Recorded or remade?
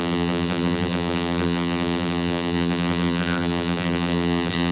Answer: remade